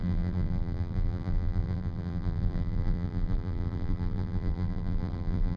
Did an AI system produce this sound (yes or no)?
yes